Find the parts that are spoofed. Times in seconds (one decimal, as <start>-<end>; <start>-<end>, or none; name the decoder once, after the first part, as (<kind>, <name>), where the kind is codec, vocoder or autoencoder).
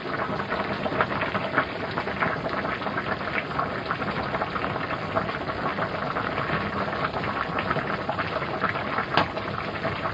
none